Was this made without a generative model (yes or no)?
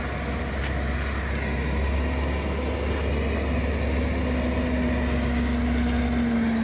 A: yes